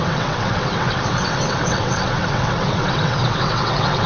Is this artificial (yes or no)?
yes